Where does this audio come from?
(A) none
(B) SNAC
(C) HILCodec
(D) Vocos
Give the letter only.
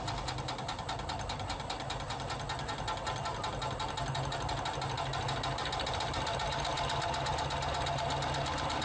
A